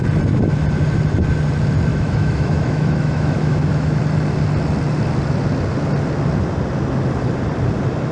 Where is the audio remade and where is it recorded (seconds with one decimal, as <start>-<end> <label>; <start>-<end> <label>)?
0.0-1.9 recorded; 1.9-4.0 remade; 4.0-8.1 recorded